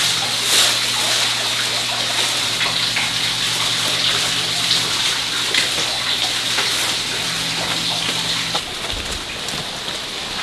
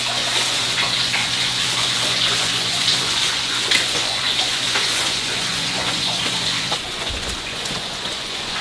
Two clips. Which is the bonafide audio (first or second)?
first